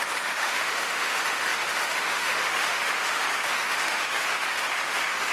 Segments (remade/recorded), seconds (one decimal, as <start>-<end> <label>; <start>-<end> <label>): 0.0-5.3 remade